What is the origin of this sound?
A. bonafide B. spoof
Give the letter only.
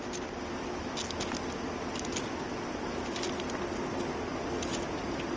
A